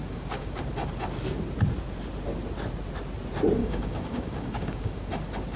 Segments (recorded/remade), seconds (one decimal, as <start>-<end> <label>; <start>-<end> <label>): 0.0-0.6 remade; 0.6-3.6 recorded; 3.6-5.1 remade; 5.1-5.6 recorded